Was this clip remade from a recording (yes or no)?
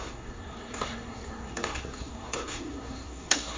yes